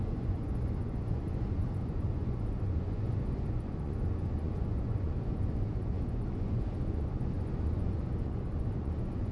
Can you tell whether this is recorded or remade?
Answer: remade